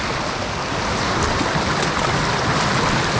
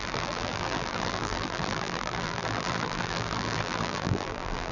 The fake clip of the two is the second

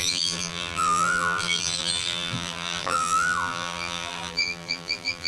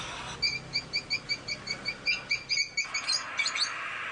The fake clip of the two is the first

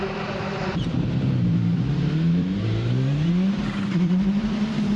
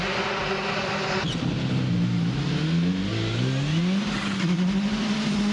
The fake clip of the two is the first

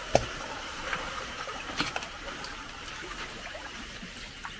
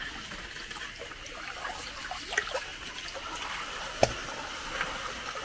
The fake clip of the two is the first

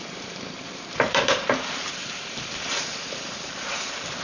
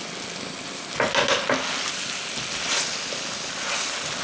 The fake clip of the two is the first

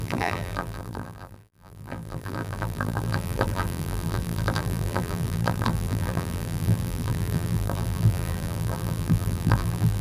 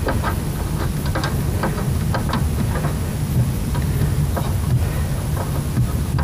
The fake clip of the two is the first